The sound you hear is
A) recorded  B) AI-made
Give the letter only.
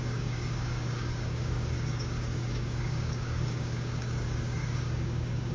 B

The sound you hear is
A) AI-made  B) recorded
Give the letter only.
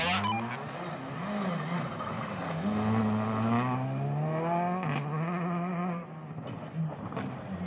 B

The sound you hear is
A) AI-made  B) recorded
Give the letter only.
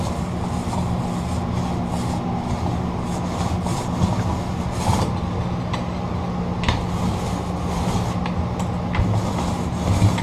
B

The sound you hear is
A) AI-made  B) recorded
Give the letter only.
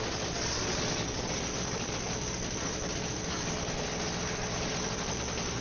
B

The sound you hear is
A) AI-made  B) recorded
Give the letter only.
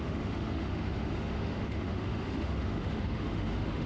A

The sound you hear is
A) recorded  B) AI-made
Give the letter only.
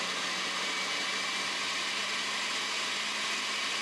A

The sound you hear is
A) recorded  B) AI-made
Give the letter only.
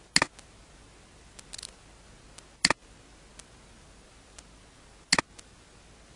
A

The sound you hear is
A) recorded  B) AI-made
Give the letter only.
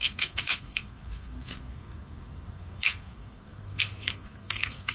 B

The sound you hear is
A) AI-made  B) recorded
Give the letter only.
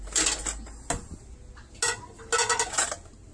B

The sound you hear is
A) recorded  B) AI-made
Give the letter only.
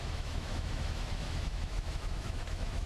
B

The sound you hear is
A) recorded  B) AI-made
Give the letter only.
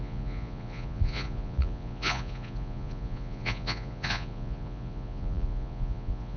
B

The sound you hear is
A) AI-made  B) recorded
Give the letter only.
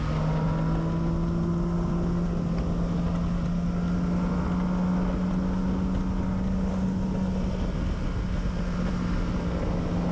B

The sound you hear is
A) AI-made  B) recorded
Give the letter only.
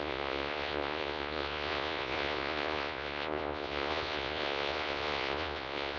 A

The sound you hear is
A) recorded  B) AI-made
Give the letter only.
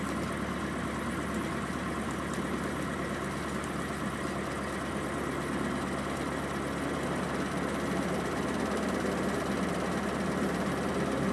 A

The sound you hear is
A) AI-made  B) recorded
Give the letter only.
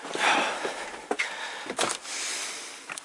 B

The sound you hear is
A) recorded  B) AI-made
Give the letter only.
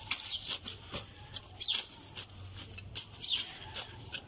A